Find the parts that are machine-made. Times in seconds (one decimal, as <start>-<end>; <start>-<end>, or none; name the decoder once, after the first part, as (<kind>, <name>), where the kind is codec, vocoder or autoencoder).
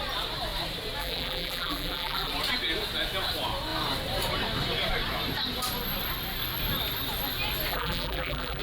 1.0-2.3 (vocoder, BigVGAN v2); 7.7-8.6